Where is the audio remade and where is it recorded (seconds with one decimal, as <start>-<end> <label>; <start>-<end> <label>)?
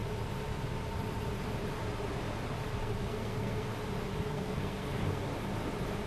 0.0-2.8 recorded; 2.8-3.7 remade; 3.7-4.2 recorded; 4.2-5.3 remade; 5.3-6.1 recorded